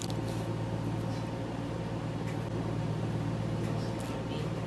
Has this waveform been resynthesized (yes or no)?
no